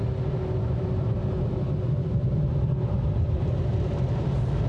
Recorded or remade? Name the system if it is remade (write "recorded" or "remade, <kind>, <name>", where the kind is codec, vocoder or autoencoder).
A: recorded